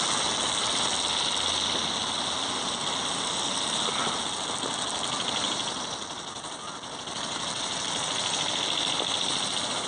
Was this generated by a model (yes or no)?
no